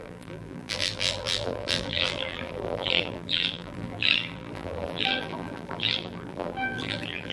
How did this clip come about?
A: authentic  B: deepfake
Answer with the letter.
B